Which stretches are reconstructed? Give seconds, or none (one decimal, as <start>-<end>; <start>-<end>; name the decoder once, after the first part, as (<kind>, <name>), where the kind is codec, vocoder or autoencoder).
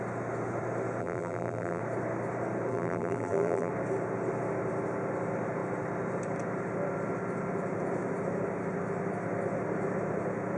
1.0-1.8 (vocoder, BigVGAN v2); 2.7-3.7